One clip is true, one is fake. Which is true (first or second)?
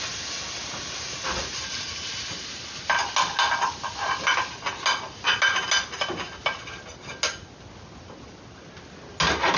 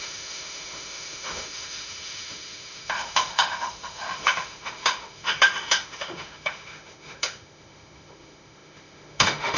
first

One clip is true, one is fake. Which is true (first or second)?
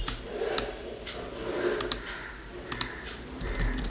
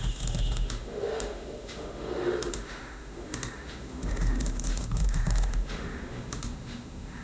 first